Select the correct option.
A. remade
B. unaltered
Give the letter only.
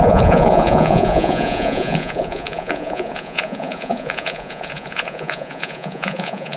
A